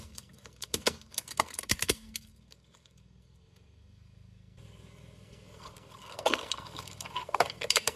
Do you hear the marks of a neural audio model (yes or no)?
yes